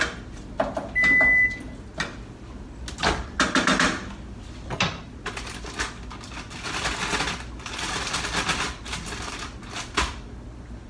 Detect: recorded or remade recorded